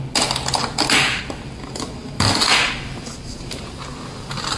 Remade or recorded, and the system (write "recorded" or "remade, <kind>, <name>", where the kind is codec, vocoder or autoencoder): recorded